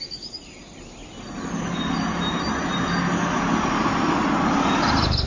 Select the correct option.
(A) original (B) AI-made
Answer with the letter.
A